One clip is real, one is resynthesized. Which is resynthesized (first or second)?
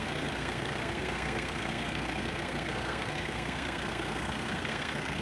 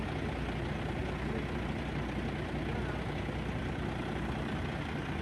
first